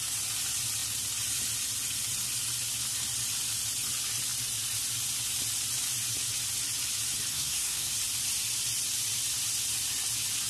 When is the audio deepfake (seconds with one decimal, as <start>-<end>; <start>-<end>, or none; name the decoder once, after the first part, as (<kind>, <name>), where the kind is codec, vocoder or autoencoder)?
7.3-7.9 (codec, SNAC)